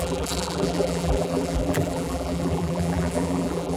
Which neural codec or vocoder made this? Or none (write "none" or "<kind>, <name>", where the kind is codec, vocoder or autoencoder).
vocoder, BigVGAN v2